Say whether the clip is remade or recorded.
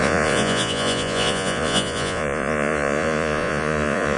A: remade